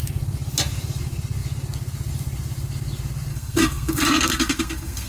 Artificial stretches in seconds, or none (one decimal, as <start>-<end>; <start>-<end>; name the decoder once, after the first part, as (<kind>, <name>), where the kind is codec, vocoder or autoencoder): 3.3-5.1 (codec, SNAC)